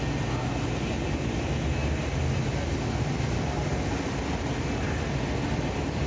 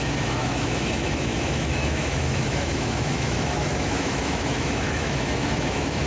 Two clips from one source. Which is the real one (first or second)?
first